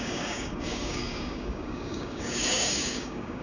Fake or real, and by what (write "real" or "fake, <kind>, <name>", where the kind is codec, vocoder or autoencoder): fake, codec, DAC